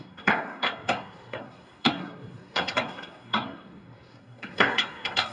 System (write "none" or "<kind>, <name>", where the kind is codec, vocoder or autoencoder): codec, SNAC